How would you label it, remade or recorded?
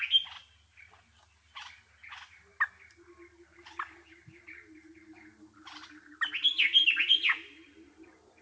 recorded